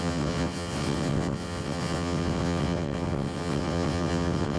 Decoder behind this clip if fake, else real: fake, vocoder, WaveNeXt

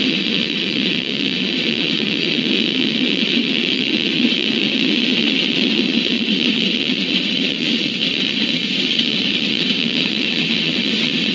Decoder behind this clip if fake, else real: fake, vocoder, WaveNeXt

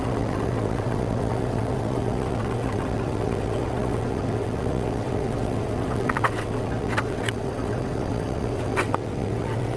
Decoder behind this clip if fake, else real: fake, vocoder, WaveNeXt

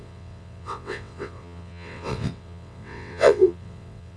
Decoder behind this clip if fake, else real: fake, vocoder, WaveNeXt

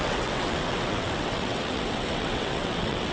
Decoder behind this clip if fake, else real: fake, vocoder, WaveNeXt